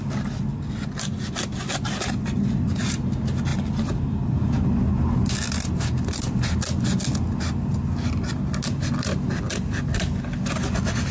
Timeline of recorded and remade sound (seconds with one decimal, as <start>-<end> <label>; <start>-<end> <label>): 0.0-11.1 recorded